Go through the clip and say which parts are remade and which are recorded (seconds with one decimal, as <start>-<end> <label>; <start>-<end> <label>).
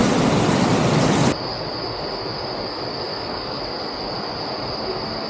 0.0-3.1 recorded; 3.1-3.6 remade; 3.6-5.3 recorded